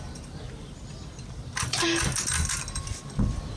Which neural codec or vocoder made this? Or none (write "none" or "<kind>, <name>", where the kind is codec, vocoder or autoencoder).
none